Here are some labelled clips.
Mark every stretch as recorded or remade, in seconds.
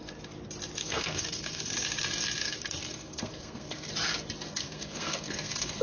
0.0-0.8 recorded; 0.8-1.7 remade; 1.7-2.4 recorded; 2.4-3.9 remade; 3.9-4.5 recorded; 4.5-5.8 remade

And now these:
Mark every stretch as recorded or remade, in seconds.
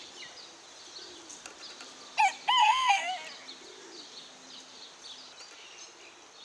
0.0-2.6 recorded; 2.6-3.1 remade; 3.1-6.4 recorded